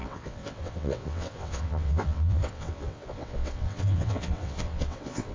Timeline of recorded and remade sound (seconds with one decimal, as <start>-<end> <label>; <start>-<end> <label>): 0.0-5.3 remade